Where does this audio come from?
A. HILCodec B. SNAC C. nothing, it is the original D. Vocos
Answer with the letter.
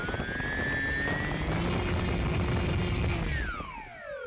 C